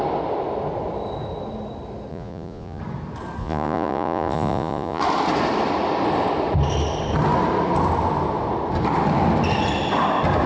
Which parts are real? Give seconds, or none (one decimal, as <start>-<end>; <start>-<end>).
0.0-2.1; 2.8-3.4; 5.0-10.5